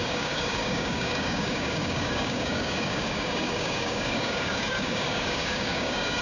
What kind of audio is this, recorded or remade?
remade